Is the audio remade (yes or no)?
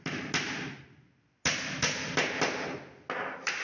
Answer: no